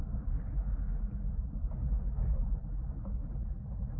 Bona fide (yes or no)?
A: yes